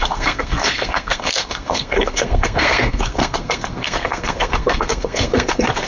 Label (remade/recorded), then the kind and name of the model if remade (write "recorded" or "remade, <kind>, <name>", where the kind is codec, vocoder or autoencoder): remade, codec, SNAC